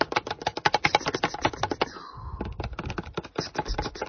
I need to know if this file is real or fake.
real